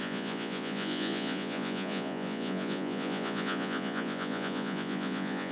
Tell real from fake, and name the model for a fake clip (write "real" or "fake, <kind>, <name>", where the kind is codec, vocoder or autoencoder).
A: fake, vocoder, Vocos